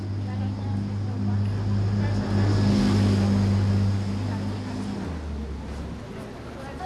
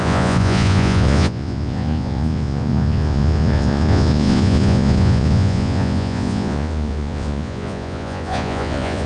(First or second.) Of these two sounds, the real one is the first